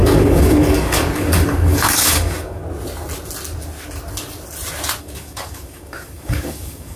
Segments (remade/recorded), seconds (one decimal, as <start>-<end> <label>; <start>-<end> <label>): 0.0-2.6 remade; 2.6-5.0 recorded; 5.0-7.0 remade